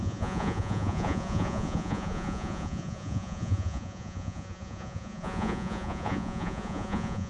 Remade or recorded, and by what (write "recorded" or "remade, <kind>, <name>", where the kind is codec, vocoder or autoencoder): remade, vocoder, Vocos